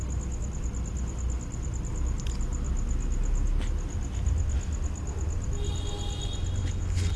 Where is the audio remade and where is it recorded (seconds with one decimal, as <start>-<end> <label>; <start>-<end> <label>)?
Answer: 0.0-6.6 recorded; 6.6-7.2 remade